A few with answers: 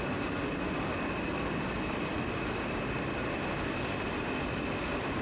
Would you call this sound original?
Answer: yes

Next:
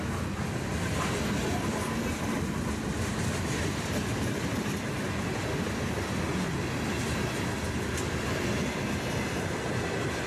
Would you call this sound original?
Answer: yes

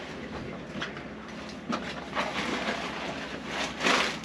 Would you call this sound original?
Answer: yes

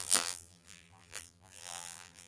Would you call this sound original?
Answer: no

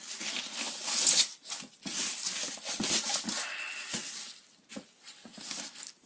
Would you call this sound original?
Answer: yes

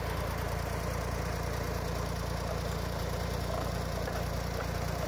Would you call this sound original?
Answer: no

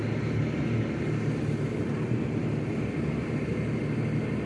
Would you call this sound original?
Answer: yes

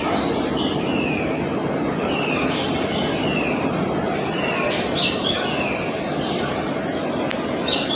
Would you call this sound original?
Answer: yes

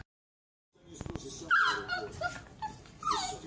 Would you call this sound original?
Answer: no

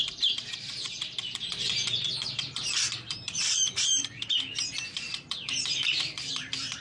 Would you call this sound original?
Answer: no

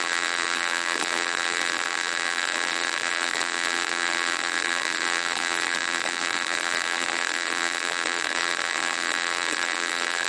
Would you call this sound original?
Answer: no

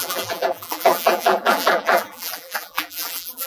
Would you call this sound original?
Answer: no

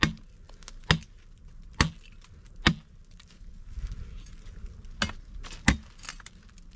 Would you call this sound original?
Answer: yes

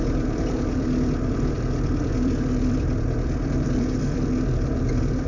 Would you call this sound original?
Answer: no